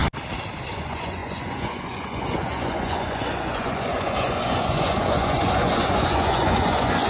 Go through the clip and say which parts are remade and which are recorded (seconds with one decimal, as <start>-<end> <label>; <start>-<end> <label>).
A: 0.0-0.7 recorded; 0.7-7.1 remade